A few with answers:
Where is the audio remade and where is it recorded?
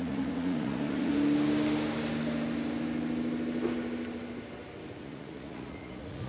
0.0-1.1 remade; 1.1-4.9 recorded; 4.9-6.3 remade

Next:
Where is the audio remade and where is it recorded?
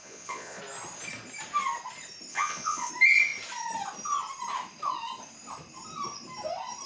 0.0-0.6 remade; 0.6-2.3 recorded; 2.3-2.9 remade; 2.9-6.9 recorded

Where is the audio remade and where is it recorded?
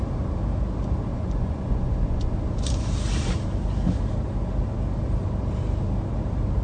0.0-1.1 recorded; 1.1-2.3 remade; 2.3-6.6 recorded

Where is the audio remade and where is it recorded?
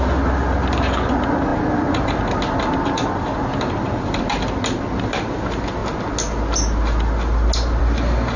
0.0-8.4 recorded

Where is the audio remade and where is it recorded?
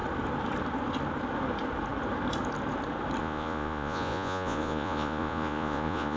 0.0-3.2 recorded; 3.2-6.2 remade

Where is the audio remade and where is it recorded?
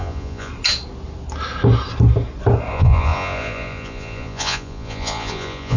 0.0-0.5 remade; 0.5-2.7 recorded; 2.7-5.8 remade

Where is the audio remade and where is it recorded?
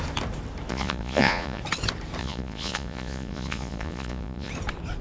0.0-0.7 recorded; 0.7-1.6 remade; 1.6-2.2 recorded; 2.2-4.5 remade; 4.5-5.0 recorded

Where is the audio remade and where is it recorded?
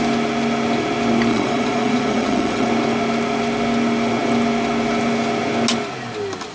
0.0-1.3 recorded; 1.3-2.7 remade; 2.7-6.5 recorded